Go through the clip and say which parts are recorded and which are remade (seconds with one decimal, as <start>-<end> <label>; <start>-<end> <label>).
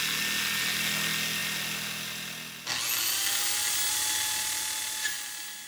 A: 0.0-5.7 recorded